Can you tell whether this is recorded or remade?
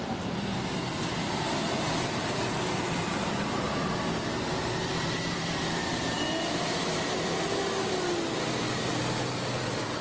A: recorded